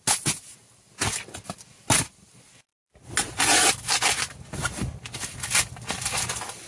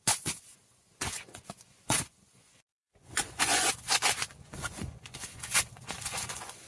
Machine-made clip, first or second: second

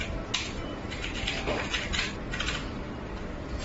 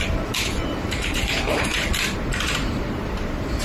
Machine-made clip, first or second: second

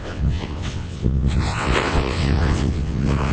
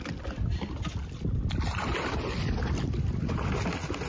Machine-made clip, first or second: first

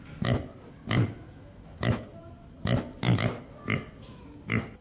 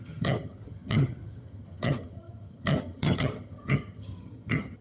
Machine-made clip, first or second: second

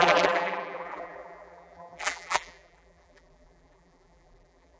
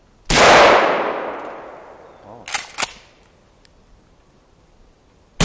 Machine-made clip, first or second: first